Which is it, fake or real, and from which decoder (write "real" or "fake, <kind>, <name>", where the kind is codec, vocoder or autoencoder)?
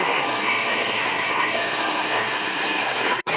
fake, codec, SNAC